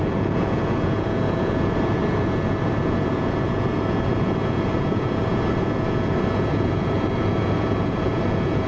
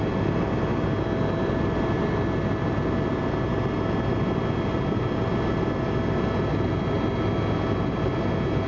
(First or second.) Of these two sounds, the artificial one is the first